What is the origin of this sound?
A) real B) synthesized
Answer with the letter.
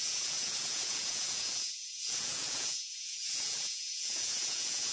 B